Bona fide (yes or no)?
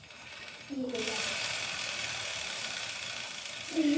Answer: no